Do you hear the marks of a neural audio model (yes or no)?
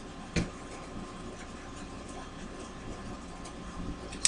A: no